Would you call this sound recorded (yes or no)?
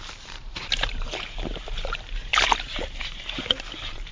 no